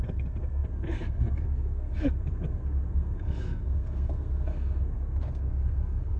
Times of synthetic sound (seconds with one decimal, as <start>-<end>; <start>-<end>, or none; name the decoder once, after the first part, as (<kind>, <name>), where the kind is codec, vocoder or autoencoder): 0.0-6.2 (codec, SNAC)